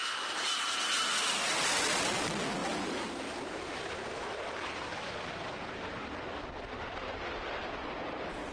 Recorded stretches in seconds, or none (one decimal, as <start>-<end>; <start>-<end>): 0.0-8.5